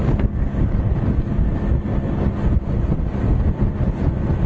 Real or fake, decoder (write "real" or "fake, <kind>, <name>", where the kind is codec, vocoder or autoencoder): real